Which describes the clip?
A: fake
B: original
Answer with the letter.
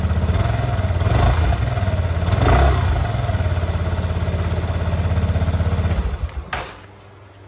B